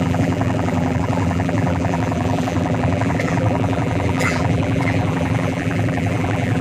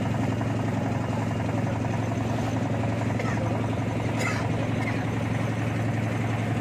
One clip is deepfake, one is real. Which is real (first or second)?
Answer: second